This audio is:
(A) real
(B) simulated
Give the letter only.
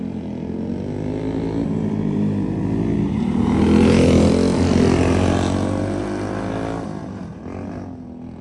A